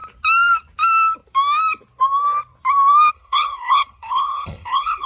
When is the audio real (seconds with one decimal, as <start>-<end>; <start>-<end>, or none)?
0.0-3.1